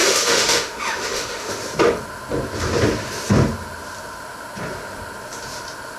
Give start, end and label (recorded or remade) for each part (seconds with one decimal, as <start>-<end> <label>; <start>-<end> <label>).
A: 0.0-1.5 remade; 1.5-6.0 recorded